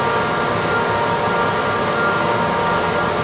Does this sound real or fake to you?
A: real